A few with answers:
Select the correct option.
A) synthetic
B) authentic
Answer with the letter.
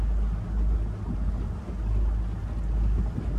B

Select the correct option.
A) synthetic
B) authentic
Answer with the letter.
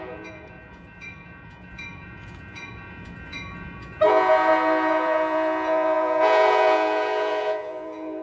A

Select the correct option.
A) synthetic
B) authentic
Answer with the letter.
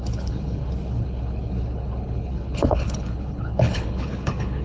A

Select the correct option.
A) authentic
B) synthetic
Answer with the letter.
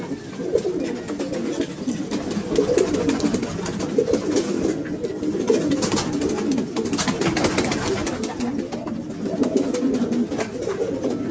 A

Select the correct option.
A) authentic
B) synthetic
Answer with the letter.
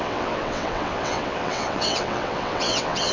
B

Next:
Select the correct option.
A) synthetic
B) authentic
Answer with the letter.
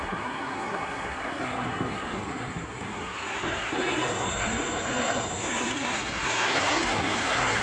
A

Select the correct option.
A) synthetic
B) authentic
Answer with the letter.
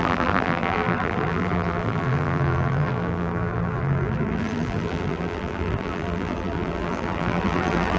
A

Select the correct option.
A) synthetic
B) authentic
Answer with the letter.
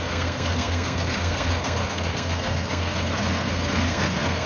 A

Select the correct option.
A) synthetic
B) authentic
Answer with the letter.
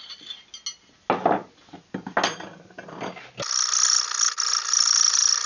B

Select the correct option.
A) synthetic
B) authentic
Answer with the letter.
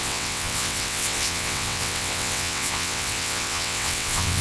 A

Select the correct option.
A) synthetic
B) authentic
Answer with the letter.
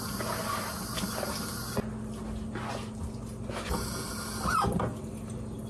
B